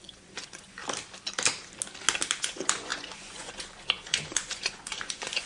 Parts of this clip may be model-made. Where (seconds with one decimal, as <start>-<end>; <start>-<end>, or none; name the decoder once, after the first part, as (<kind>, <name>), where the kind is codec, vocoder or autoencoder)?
0.0-0.8 (vocoder, Vocos); 2.4-5.5